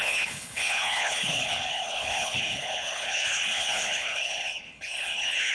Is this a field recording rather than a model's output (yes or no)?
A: no